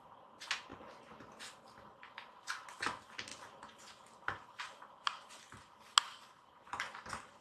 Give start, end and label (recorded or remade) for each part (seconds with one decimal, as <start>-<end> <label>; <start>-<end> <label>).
0.0-7.4 recorded